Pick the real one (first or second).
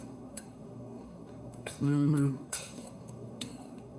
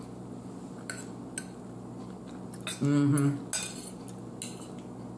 second